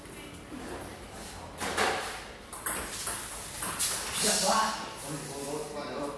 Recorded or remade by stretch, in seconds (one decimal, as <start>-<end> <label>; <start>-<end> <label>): 0.0-0.9 recorded; 0.9-4.6 remade; 4.6-6.2 recorded